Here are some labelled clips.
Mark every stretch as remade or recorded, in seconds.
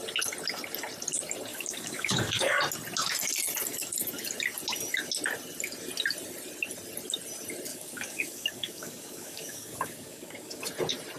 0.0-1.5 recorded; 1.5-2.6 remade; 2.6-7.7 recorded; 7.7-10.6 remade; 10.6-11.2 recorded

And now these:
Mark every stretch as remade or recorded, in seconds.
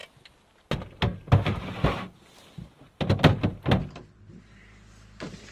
0.0-5.5 recorded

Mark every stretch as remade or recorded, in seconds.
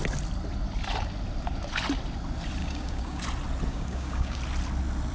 0.0-2.6 recorded; 2.6-3.2 remade; 3.2-3.7 recorded; 3.7-4.4 remade; 4.4-5.1 recorded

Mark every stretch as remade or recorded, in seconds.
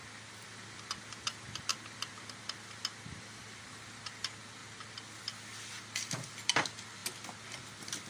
0.0-8.1 recorded